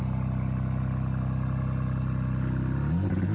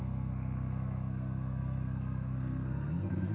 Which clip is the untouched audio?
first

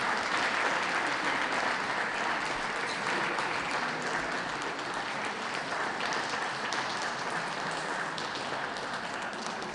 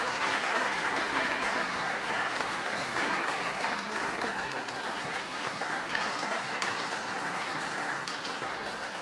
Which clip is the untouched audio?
first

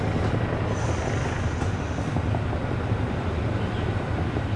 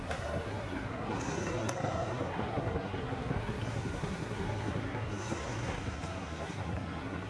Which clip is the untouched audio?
first